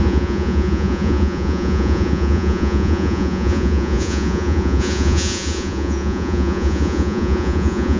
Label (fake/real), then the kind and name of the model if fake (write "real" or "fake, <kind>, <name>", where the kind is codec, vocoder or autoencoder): fake, vocoder, Vocos